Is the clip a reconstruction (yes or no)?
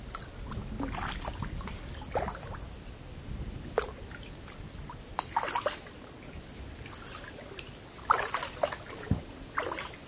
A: no